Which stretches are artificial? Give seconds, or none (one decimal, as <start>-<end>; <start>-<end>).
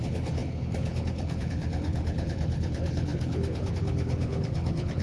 0.0-5.0